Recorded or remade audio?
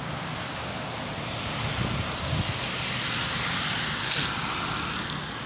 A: recorded